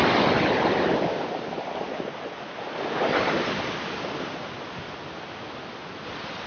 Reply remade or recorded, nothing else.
recorded